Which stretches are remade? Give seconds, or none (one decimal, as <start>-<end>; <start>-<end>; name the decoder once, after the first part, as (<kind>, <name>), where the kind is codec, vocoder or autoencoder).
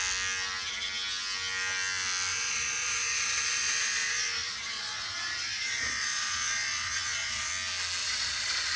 2.3-7.5 (vocoder, Vocos); 8.0-8.8